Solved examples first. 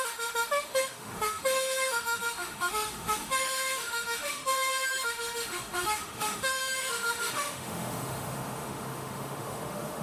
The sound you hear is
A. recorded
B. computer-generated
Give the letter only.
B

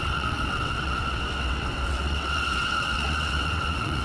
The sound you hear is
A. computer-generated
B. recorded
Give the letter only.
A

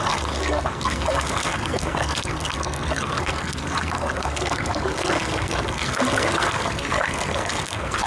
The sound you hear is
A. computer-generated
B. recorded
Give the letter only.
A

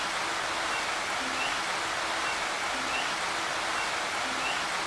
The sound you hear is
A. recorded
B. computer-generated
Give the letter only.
A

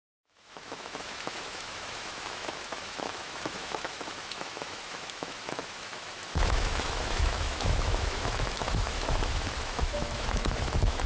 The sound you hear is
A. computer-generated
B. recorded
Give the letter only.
A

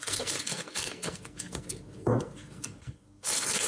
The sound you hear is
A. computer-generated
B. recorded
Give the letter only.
A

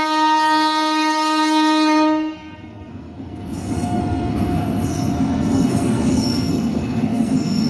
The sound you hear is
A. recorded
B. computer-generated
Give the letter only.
B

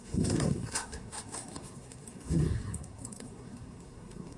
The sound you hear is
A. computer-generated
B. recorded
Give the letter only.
A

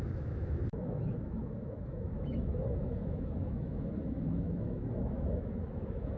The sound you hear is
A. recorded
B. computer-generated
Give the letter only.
B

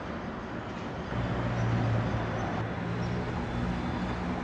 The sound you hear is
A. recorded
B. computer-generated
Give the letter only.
A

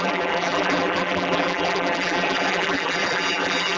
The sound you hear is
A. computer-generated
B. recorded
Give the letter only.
A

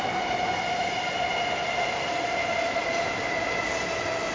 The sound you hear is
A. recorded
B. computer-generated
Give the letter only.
A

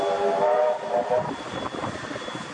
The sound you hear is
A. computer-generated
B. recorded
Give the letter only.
B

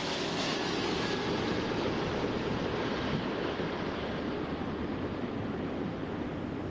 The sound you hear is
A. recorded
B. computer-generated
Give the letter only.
A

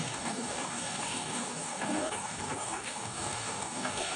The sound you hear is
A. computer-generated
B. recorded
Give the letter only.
A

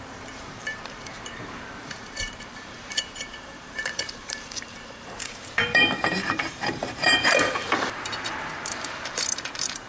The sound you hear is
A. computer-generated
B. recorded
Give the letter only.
A